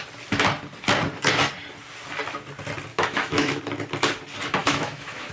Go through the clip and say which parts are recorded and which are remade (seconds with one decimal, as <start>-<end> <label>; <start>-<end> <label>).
0.0-2.9 recorded; 2.9-3.6 remade; 3.6-4.6 recorded; 4.6-5.3 remade

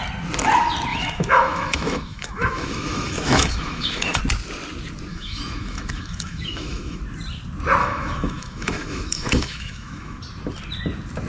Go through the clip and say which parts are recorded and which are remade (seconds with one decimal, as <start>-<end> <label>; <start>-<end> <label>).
0.0-0.9 recorded; 0.9-4.2 remade; 4.2-5.1 recorded; 5.1-7.0 remade; 7.0-7.8 recorded; 7.8-10.2 remade; 10.2-11.3 recorded